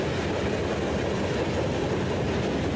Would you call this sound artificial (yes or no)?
no